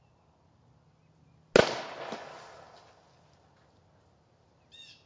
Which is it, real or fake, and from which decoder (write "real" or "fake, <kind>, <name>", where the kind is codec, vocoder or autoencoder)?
real